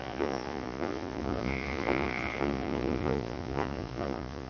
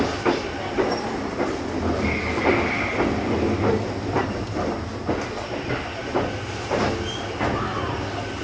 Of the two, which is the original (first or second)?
second